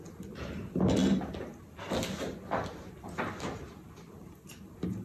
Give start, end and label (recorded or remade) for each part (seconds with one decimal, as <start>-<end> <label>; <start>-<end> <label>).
0.0-5.0 recorded

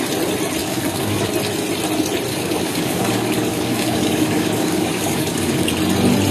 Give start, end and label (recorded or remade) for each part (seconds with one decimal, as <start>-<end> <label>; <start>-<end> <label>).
0.0-0.6 recorded; 0.6-1.3 remade; 1.3-2.3 recorded; 2.3-5.8 remade; 5.8-6.3 recorded